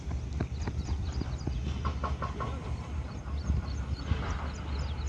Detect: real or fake fake